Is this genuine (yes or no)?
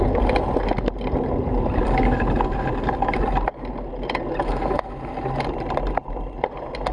yes